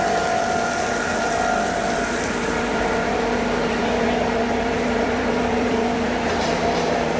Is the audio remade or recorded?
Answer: remade